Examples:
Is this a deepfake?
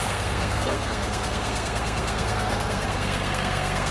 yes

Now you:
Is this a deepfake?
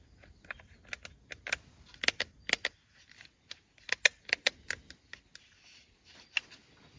no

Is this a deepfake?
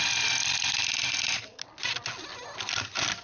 no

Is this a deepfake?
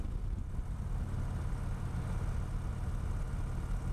no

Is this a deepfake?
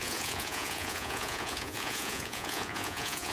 yes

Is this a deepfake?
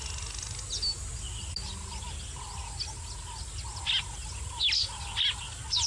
no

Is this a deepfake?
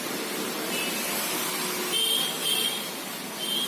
no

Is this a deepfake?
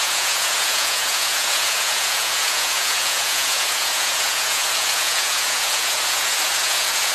yes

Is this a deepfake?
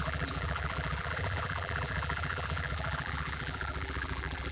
yes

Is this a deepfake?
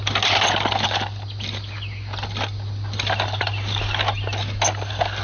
no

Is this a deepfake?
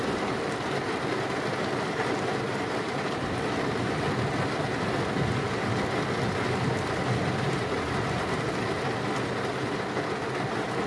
no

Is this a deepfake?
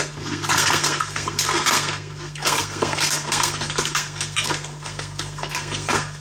yes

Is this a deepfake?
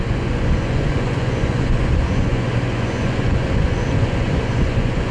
yes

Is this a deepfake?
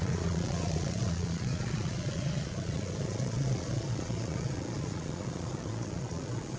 yes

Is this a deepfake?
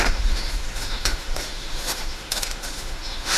yes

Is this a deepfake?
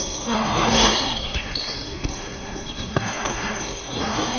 yes